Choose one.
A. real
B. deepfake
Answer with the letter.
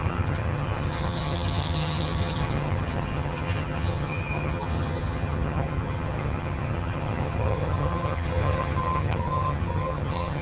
B